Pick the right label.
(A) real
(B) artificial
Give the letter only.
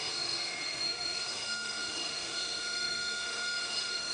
B